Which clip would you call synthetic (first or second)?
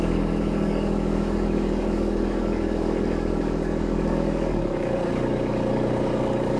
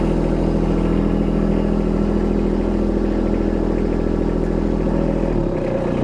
first